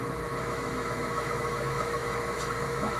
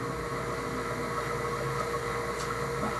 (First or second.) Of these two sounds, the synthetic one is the first